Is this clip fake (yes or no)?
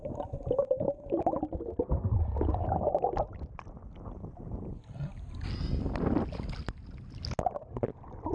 no